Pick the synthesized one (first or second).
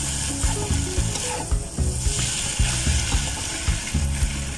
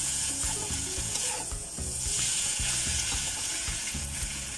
second